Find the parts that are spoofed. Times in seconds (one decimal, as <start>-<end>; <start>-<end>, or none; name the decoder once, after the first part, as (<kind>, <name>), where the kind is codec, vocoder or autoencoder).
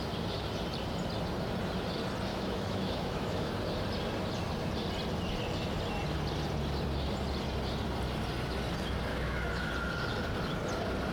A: 2.3-3.5 (autoencoder, DAC-VAE); 9.1-9.7